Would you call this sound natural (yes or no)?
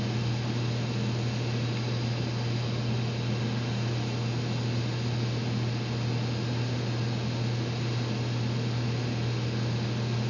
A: yes